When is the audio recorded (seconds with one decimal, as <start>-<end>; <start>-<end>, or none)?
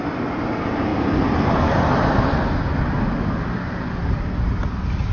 0.0-5.1